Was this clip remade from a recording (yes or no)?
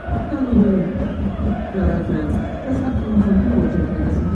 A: no